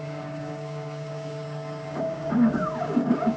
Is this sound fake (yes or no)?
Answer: yes